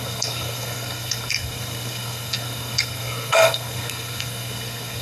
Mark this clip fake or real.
fake